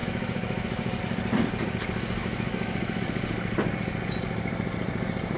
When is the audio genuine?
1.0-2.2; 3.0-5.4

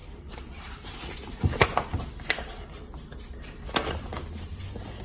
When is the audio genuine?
4.1-5.0

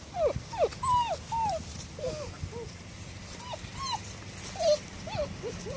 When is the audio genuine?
0.0-5.8